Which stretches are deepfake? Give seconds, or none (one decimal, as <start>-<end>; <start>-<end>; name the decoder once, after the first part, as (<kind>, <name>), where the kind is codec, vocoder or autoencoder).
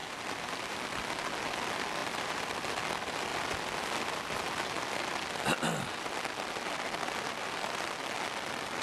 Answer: 0.0-1.1 (vocoder, BigVGAN v2); 2.0-2.8